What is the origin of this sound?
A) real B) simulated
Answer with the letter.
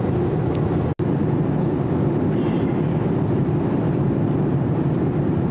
A